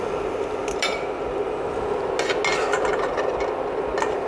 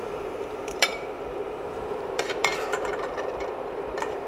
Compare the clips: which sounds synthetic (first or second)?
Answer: second